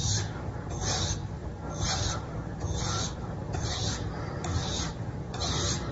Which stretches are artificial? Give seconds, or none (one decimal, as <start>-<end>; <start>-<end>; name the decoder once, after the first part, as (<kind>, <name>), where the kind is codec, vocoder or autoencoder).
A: none

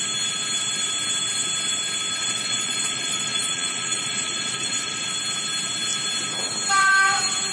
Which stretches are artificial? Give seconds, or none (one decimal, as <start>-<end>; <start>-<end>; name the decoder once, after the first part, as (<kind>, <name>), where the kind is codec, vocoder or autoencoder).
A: 2.2-5.1 (vocoder, Vocos)